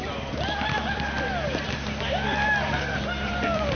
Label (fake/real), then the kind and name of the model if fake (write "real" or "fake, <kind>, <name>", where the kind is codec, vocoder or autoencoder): fake, vocoder, BigVGAN v2